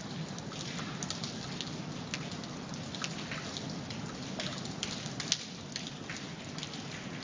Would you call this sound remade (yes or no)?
no